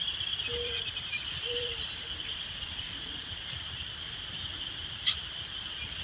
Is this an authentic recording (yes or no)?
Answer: no